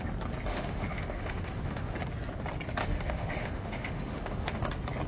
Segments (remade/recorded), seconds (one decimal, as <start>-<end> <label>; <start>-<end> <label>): 0.0-0.5 recorded; 0.5-1.9 remade; 1.9-2.8 recorded; 2.8-4.6 remade; 4.6-5.1 recorded